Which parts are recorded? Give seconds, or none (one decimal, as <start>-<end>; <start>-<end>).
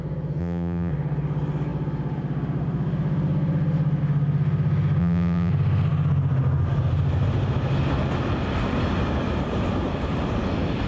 0.0-0.4; 0.9-5.0; 5.5-10.9